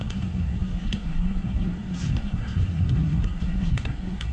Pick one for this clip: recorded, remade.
remade